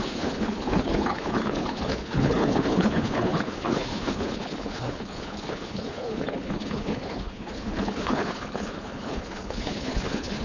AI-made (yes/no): yes